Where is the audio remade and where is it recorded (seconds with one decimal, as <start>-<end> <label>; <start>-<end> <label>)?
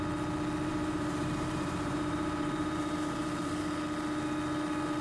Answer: 0.0-0.7 recorded; 0.7-3.7 remade; 3.7-5.0 recorded